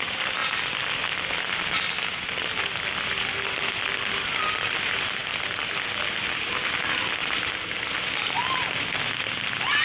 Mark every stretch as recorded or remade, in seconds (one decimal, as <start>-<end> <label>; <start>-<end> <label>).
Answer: 0.0-9.8 recorded